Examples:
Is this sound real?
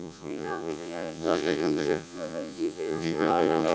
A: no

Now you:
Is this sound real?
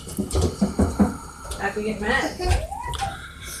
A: yes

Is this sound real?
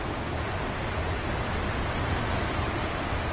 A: yes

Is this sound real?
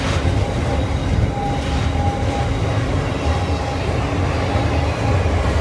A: yes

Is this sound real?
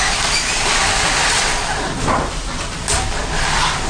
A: yes